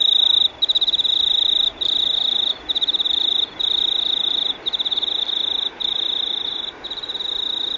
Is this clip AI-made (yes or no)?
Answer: no